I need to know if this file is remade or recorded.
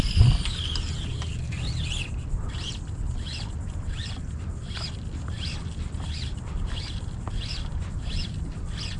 recorded